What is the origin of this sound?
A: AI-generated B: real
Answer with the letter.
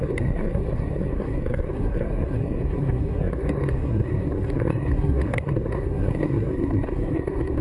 A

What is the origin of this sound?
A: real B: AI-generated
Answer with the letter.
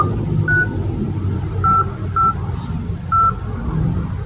A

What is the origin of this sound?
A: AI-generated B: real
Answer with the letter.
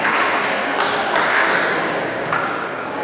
A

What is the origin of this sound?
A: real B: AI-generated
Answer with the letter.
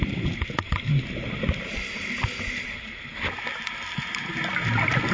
A